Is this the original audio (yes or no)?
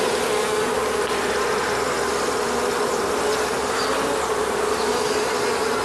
yes